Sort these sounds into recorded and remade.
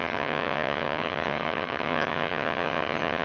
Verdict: remade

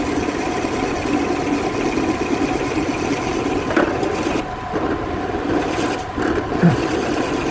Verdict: recorded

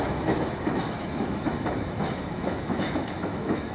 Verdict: remade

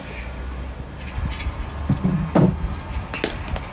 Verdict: recorded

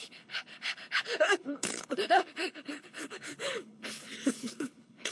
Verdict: remade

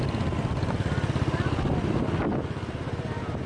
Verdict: recorded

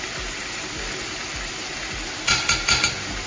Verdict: recorded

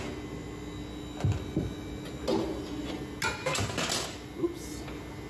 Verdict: recorded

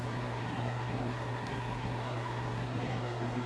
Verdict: remade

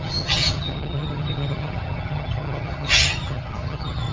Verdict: remade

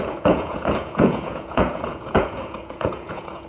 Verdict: remade